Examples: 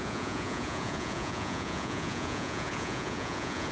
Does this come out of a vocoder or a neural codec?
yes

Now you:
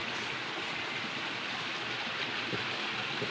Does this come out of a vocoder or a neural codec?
yes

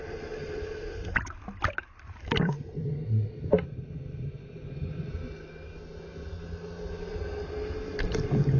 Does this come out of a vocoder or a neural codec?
no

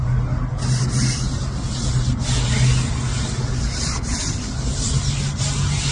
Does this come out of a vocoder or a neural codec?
no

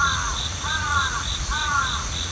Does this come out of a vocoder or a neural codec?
yes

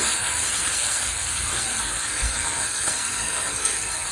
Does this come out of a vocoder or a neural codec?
yes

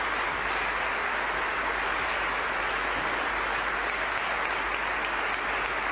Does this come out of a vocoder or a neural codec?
no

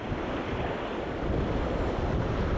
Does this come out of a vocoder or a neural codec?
no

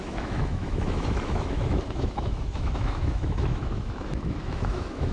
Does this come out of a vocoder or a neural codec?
yes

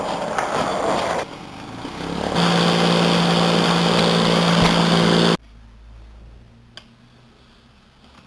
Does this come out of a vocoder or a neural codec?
no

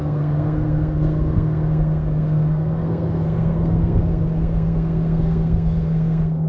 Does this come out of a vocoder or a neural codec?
yes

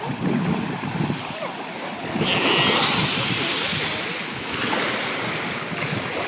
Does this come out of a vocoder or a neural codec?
no